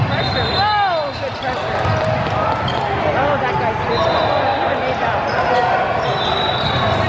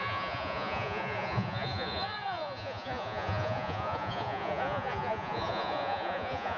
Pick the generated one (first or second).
second